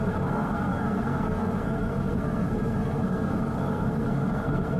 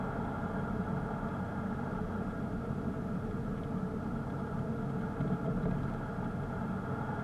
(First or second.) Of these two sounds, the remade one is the first